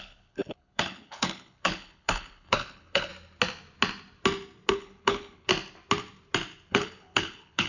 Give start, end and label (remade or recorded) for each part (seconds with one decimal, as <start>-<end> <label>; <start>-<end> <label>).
0.0-3.1 remade; 3.1-4.7 recorded; 4.7-5.5 remade; 5.5-6.7 recorded; 6.7-7.7 remade